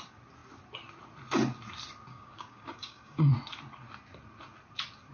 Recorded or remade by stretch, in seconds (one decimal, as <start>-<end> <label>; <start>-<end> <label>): 0.0-2.1 recorded; 2.1-3.3 remade; 3.3-5.1 recorded